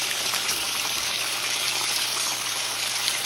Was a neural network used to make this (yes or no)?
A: yes